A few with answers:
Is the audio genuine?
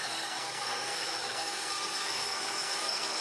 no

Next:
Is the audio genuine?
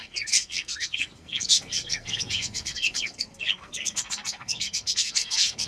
no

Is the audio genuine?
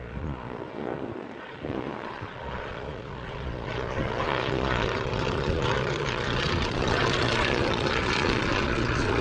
no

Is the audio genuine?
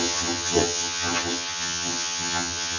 no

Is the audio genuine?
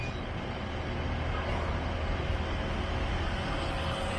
yes